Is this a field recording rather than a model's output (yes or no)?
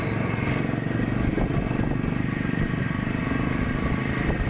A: yes